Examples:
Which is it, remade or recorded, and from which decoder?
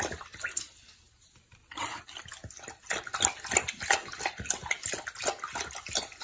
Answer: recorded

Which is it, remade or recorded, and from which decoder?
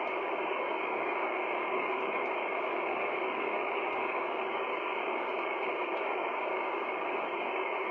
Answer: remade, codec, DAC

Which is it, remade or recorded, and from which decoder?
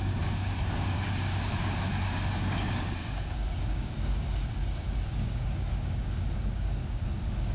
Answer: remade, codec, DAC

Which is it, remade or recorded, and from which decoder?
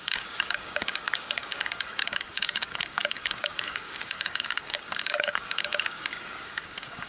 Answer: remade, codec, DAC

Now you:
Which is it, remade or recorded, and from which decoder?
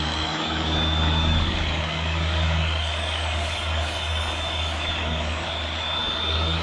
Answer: remade, codec, DAC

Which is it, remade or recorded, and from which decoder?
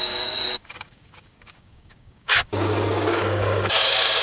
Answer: remade, codec, DAC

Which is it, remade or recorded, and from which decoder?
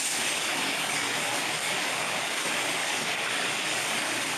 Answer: remade, codec, DAC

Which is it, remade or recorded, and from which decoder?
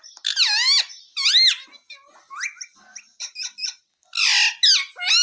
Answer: recorded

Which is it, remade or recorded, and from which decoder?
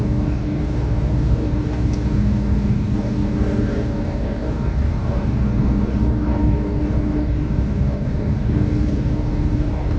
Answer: remade, codec, DAC